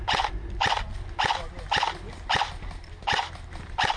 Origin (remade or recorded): recorded